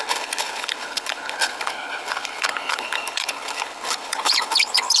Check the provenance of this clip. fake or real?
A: fake